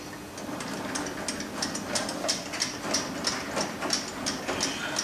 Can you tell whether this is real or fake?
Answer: real